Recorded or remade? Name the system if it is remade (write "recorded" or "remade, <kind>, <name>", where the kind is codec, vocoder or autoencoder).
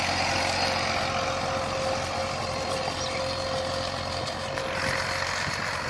recorded